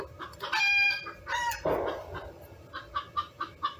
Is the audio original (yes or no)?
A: yes